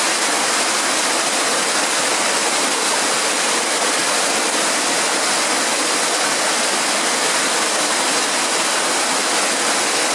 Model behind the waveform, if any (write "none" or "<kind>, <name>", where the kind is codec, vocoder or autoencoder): none